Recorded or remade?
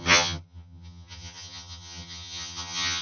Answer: remade